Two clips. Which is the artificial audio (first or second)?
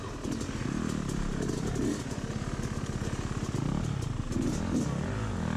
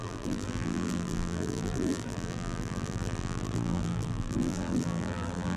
second